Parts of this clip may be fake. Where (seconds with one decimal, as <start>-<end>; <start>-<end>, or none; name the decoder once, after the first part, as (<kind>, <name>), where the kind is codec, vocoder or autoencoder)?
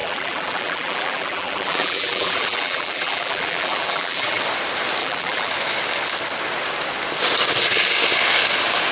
0.0-4.4 (vocoder, BigVGAN v2); 5.0-5.5